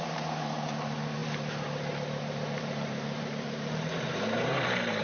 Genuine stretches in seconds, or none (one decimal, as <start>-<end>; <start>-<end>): none